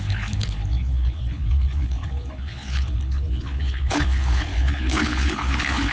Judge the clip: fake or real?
fake